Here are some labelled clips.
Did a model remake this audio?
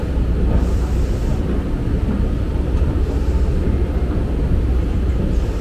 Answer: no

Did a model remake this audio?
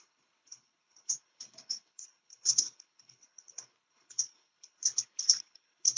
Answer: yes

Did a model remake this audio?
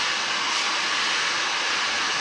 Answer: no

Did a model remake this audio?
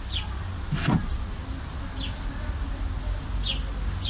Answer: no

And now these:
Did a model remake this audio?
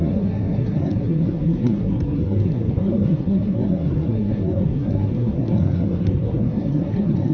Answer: yes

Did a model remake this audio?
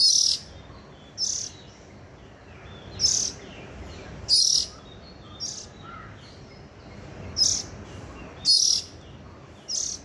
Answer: no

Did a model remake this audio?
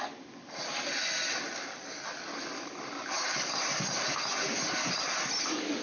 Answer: no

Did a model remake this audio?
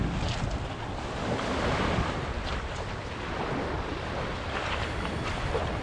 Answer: no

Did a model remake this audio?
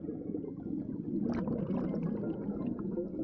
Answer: no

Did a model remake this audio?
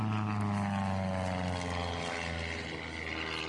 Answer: no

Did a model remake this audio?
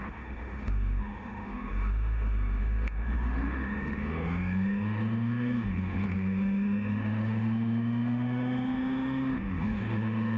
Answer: yes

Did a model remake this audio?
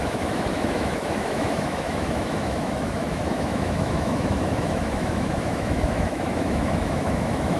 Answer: yes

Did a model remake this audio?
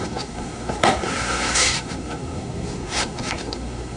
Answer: yes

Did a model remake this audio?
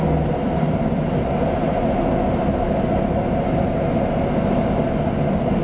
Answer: no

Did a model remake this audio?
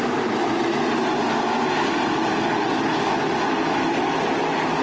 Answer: no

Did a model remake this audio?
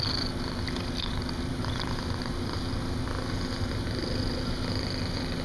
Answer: no